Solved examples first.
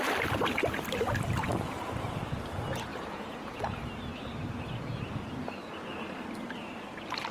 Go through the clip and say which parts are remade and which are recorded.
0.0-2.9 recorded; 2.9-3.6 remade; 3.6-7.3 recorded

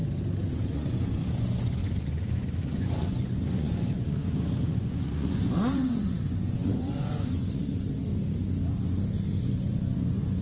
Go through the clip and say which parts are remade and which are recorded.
0.0-0.7 recorded; 0.7-8.1 remade; 8.1-9.4 recorded; 9.4-10.4 remade

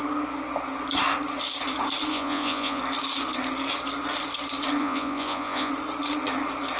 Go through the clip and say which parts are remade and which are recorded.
0.0-2.1 recorded; 2.1-2.8 remade; 2.8-4.8 recorded; 4.8-5.7 remade; 5.7-6.8 recorded

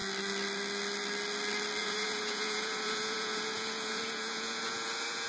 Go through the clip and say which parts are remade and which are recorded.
0.0-1.8 recorded; 1.8-5.3 remade

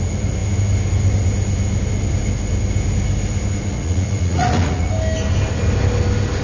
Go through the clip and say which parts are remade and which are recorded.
0.0-3.7 recorded; 3.7-4.9 remade; 4.9-6.4 recorded

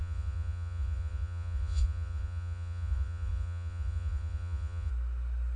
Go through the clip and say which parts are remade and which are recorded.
0.0-4.9 remade; 4.9-5.6 recorded

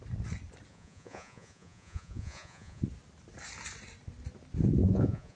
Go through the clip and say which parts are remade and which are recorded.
0.0-0.7 recorded; 0.7-2.8 remade; 2.8-4.8 recorded; 4.8-5.4 remade